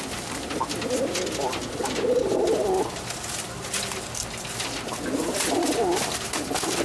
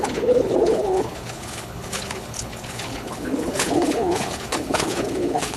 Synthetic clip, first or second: second